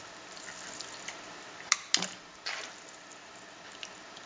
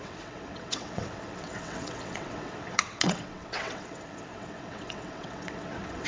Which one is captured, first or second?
first